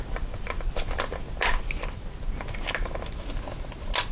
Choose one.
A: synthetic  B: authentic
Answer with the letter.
B